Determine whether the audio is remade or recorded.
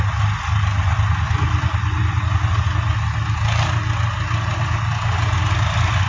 recorded